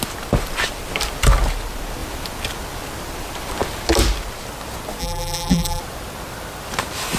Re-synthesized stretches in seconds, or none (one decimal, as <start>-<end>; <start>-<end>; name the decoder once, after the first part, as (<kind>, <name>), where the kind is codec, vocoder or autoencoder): 5.0-5.8 (vocoder, BigVGAN v2)